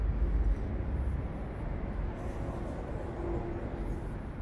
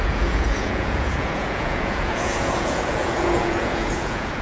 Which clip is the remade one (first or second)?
second